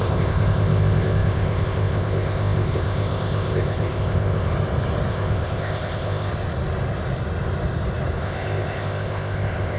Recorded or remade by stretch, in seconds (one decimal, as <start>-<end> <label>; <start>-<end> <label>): 0.0-4.5 remade; 4.5-5.1 recorded; 5.1-6.3 remade; 6.3-8.2 recorded; 8.2-9.8 remade